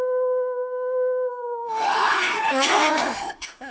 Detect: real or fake fake